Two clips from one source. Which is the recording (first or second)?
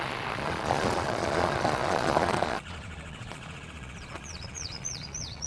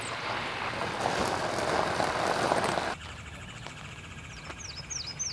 second